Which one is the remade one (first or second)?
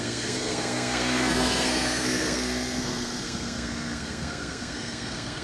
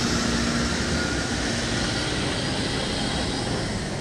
first